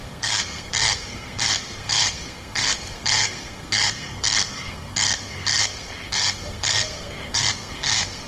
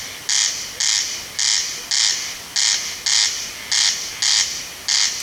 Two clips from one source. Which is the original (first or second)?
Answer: second